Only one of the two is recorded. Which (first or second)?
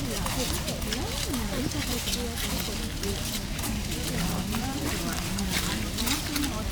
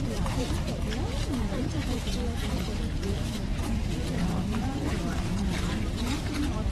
first